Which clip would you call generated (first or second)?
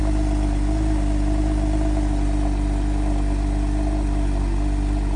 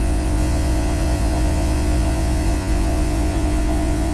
second